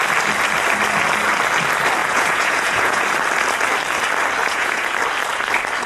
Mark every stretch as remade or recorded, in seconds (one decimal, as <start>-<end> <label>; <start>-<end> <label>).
0.0-2.0 recorded; 2.0-3.0 remade; 3.0-4.4 recorded; 4.4-4.9 remade; 4.9-5.9 recorded